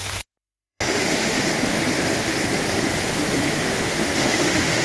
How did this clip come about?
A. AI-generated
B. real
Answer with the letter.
A